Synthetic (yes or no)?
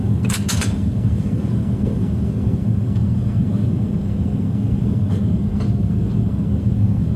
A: yes